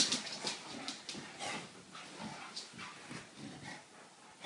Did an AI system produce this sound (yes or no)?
no